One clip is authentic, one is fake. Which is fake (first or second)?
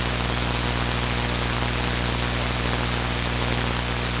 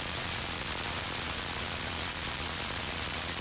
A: second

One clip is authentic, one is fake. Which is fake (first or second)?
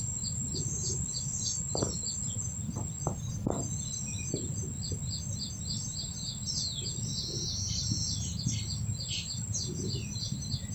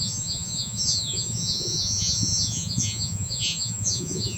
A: second